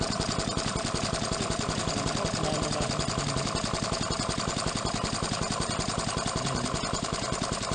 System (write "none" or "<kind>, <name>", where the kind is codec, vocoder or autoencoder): none